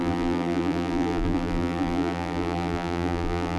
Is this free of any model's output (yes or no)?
no